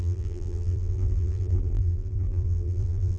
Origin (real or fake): fake